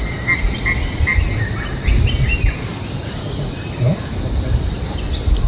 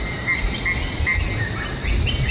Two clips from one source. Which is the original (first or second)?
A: second